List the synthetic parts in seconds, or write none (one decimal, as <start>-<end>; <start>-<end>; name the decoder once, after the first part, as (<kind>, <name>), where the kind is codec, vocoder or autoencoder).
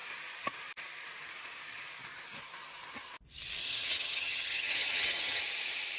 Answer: 3.6-5.4 (vocoder, HiFi-GAN)